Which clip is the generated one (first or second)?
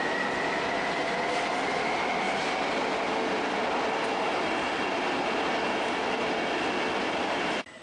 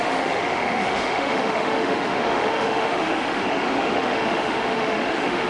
second